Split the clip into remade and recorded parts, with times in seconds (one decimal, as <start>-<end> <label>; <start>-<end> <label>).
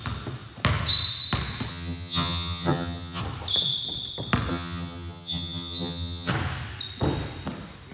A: 0.0-1.7 recorded; 1.7-3.2 remade; 3.2-4.5 recorded; 4.5-6.3 remade; 6.3-7.9 recorded